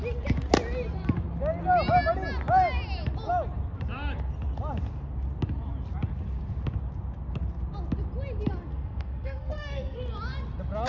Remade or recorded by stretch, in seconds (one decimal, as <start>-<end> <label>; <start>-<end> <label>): 0.0-8.7 recorded; 8.7-10.0 remade; 10.0-10.9 recorded